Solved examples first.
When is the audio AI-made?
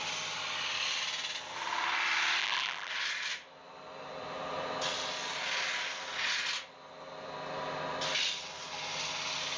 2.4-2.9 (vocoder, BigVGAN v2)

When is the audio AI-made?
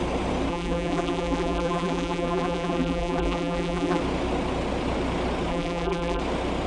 0.5-4.0 (vocoder, BigVGAN v2); 5.5-6.2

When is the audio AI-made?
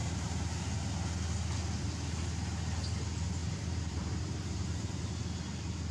0.0-0.6 (vocoder, BigVGAN v2); 3.4-5.1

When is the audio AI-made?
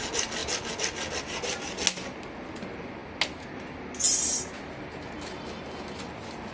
none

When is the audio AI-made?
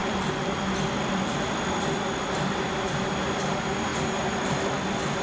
0.0-3.1 (vocoder, BigVGAN v2); 3.9-4.4